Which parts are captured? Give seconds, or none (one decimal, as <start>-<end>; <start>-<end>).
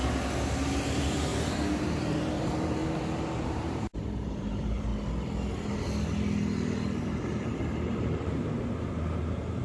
0.0-0.9; 1.3-1.8; 2.8-3.4; 4.9-7.2